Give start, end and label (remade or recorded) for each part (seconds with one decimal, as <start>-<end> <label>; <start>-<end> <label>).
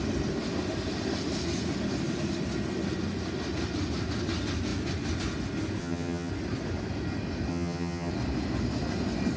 0.0-5.8 recorded; 5.8-6.3 remade; 6.3-7.5 recorded; 7.5-8.1 remade; 8.1-9.4 recorded